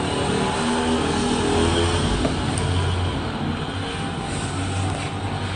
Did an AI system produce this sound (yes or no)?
no